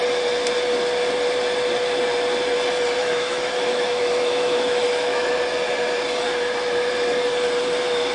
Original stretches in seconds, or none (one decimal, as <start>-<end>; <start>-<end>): 0.0-3.0; 5.3-8.1